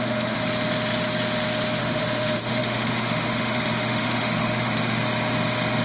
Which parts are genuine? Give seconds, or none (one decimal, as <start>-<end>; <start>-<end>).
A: 0.4-1.8; 5.0-5.8